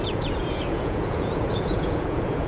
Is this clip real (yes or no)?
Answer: no